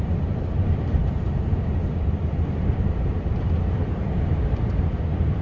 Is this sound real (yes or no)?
no